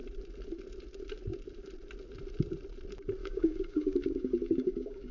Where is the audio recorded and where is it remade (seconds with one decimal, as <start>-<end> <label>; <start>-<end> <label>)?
0.0-3.2 recorded; 3.2-5.1 remade